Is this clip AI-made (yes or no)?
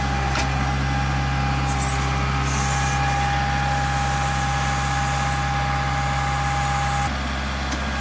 no